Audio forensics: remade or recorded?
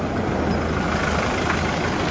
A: recorded